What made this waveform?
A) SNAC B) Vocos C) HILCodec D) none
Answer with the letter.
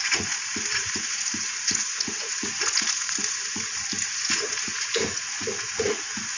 B